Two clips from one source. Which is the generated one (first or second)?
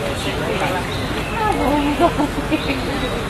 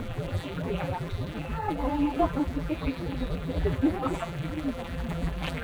second